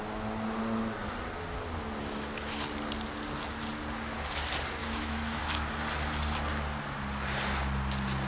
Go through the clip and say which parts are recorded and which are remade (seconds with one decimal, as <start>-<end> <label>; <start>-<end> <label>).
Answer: 0.0-4.8 recorded; 4.8-5.4 remade; 5.4-8.3 recorded